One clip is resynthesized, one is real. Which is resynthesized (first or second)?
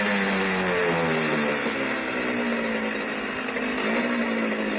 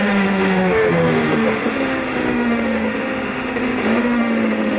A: second